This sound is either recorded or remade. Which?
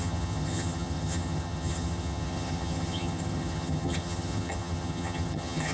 remade